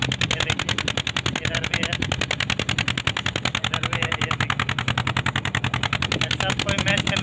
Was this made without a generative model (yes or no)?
yes